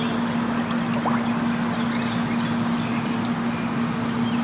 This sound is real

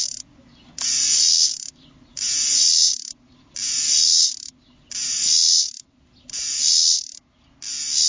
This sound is real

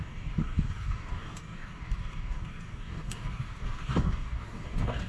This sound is fake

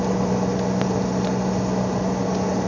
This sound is real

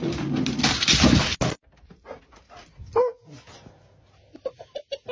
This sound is real